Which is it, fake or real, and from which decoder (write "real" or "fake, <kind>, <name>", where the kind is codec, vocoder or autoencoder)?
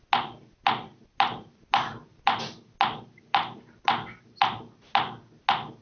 real